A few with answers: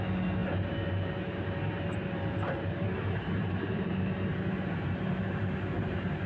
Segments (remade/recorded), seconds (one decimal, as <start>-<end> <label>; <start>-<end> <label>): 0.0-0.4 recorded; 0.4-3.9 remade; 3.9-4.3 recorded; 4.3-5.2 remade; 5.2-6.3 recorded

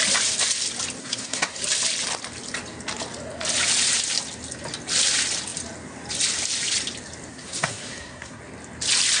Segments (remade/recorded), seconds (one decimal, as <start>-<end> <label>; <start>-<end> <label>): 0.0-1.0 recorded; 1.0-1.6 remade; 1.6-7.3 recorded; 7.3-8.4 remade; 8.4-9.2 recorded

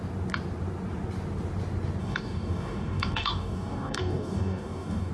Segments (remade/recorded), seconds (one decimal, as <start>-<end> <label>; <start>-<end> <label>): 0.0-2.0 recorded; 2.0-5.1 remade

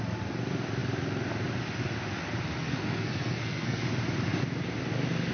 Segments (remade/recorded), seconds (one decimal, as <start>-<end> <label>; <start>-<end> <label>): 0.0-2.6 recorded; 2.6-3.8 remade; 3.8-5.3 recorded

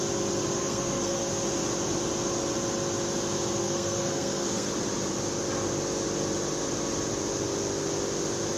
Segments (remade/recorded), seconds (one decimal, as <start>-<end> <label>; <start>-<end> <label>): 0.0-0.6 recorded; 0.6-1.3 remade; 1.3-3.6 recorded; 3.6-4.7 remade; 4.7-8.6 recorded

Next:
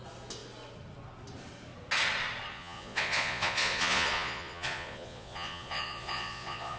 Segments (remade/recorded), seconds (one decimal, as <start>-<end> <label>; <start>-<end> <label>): 0.0-2.5 recorded; 2.5-6.8 remade

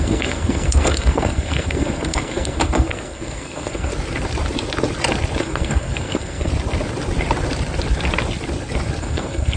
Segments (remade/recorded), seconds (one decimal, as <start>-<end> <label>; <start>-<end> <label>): 0.0-3.9 remade; 3.9-5.4 recorded; 5.4-6.5 remade; 6.5-9.0 recorded; 9.0-9.6 remade

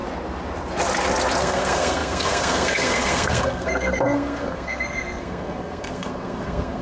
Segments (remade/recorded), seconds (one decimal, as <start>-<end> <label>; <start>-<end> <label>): 0.0-1.4 recorded; 1.4-6.8 remade